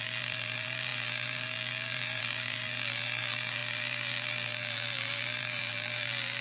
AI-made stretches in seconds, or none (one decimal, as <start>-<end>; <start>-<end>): 0.0-6.4